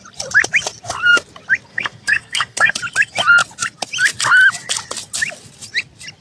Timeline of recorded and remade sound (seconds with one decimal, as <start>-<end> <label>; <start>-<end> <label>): 0.0-1.7 recorded; 1.7-2.7 remade; 2.7-6.2 recorded